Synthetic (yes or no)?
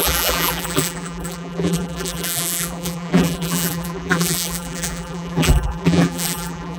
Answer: yes